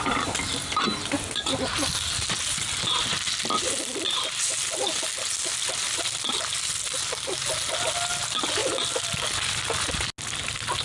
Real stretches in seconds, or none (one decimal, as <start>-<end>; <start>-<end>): 0.0-10.8